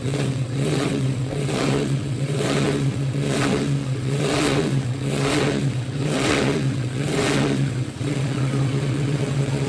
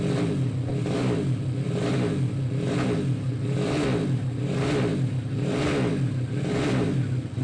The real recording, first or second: second